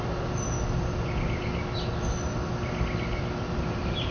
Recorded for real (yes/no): yes